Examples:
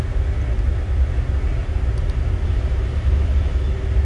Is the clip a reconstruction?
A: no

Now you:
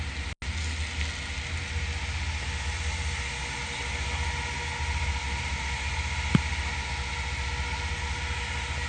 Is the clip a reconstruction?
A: no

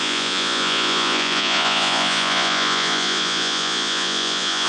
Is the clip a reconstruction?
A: yes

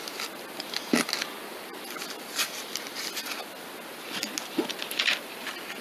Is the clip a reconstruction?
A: no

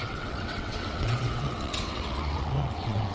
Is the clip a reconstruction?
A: yes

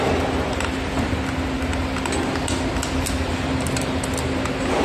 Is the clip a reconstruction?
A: no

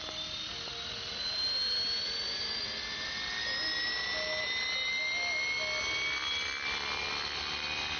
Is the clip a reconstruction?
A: no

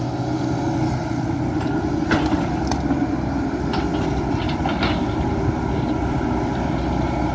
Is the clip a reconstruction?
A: no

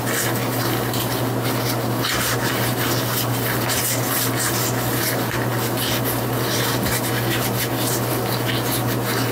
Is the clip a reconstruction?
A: no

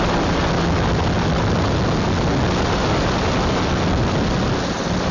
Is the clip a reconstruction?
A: no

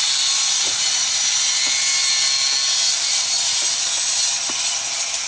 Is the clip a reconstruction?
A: no